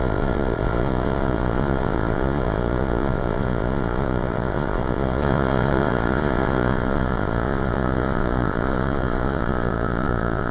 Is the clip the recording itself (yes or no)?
no